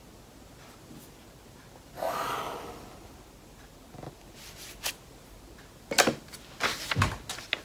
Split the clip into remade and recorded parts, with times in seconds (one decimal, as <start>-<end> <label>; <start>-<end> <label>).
0.0-7.6 recorded